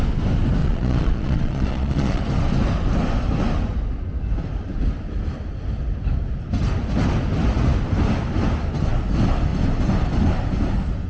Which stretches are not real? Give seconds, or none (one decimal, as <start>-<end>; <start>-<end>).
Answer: 0.6-2.2

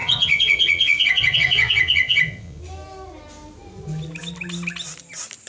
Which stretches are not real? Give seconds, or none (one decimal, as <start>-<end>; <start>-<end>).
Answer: 0.0-2.6

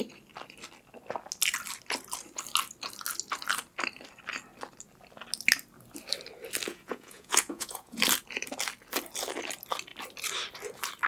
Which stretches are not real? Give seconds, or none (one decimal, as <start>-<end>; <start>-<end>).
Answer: 6.7-8.0